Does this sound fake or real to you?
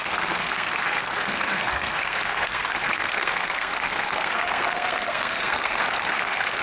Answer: fake